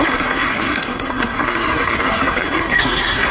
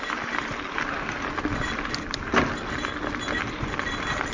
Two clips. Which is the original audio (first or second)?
second